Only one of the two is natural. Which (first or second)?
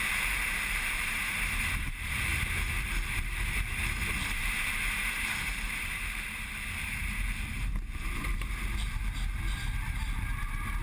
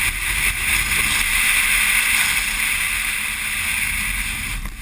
second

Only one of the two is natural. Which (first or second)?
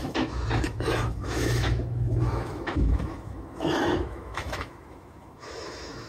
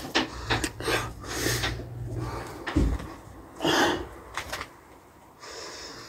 second